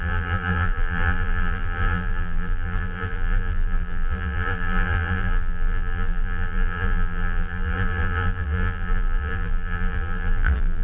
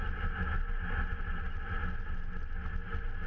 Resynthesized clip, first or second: first